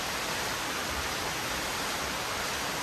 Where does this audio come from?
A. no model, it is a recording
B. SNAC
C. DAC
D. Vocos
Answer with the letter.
A